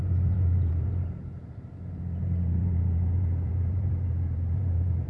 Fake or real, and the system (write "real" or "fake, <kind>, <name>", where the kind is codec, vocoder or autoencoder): fake, vocoder, BigVGAN v2